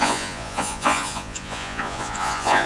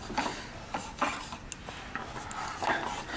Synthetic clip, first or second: first